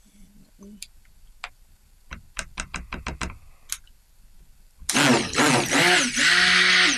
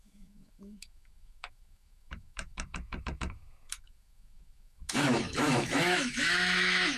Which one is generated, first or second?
second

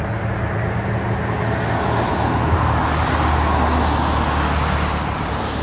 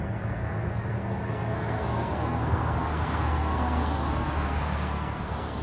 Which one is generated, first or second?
second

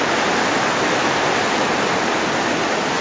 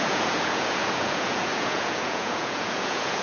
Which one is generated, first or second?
second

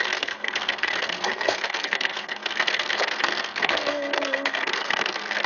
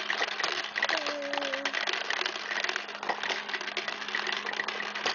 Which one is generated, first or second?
first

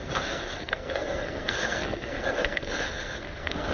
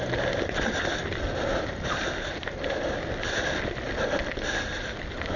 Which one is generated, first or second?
first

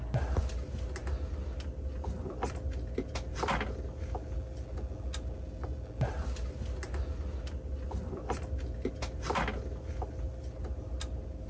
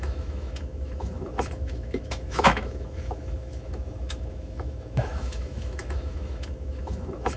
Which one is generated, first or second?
second